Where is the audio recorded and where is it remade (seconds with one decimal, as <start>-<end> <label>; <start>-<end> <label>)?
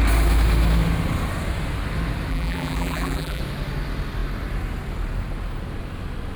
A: 0.0-2.3 recorded; 2.3-3.4 remade; 3.4-6.4 recorded